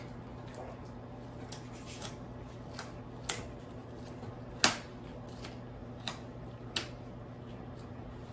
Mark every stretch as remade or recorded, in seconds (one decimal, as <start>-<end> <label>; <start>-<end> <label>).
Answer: 0.0-3.8 recorded; 3.8-4.5 remade; 4.5-5.8 recorded; 5.8-7.5 remade; 7.5-8.3 recorded